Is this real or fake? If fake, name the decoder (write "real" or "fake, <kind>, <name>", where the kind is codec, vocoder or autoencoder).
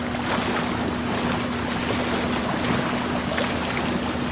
real